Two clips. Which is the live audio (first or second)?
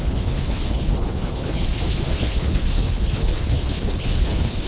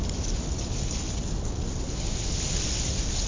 second